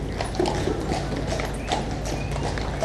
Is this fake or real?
real